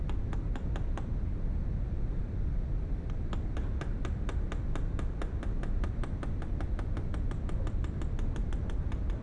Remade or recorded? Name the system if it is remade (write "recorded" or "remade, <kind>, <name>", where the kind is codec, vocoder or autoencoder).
recorded